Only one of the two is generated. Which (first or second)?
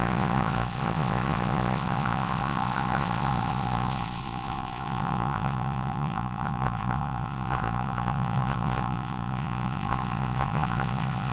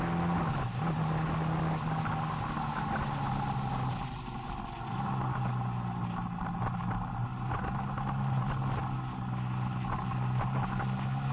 first